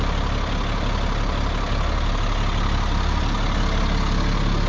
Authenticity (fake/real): real